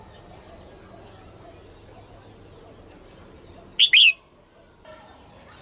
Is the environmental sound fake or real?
real